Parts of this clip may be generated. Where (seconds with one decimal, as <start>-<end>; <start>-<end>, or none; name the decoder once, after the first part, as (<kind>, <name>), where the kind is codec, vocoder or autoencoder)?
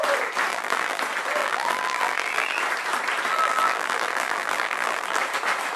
0.5-1.0 (vocoder, BigVGAN v2); 1.4-2.6; 3.3-5.2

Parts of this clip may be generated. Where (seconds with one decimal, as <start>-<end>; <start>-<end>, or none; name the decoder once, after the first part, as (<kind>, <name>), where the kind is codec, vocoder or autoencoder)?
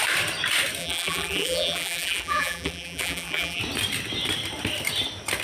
0.8-3.6 (vocoder, BigVGAN v2)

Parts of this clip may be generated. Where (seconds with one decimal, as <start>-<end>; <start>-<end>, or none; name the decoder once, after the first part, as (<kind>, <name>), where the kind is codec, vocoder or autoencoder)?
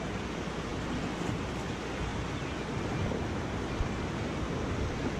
none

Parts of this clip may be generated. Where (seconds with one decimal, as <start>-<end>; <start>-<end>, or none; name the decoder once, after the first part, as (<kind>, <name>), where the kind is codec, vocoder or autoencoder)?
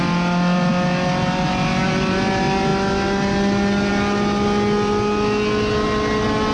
none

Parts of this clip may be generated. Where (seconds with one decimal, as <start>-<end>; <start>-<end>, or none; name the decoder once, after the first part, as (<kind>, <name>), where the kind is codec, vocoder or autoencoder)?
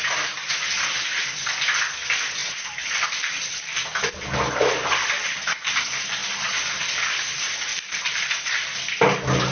2.4-3.8 (vocoder, BigVGAN v2); 5.2-5.7; 7.7-8.3